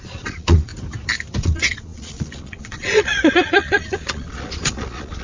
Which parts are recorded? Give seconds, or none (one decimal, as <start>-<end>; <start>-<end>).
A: 0.7-1.4